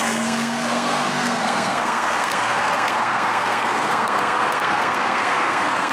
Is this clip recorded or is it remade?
remade